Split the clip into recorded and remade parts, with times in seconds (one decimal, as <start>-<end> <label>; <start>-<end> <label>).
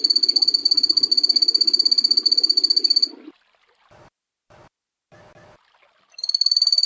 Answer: 0.0-6.9 recorded